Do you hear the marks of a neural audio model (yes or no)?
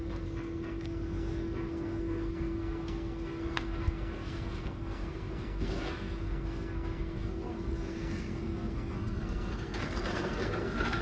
yes